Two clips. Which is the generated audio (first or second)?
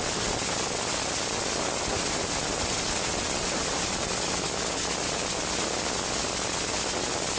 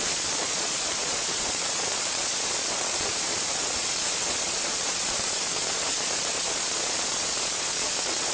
second